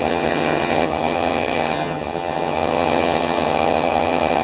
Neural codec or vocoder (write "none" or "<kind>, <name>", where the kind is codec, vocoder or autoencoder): vocoder, HiFi-GAN